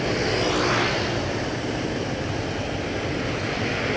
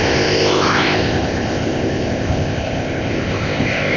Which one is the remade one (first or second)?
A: second